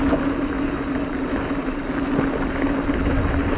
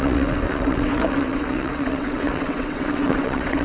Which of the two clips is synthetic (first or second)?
second